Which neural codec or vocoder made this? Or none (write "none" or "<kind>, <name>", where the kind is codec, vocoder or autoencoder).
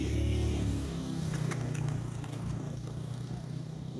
codec, DAC